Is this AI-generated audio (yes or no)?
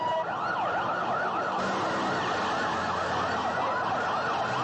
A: no